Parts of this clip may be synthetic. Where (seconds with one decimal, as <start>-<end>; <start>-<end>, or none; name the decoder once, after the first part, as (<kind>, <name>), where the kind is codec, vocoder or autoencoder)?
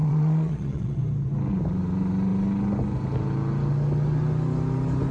0.0-1.0 (vocoder, Vocos)